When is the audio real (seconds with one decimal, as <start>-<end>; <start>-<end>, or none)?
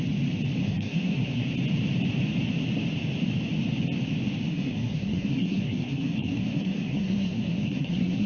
0.0-0.6; 1.5-4.5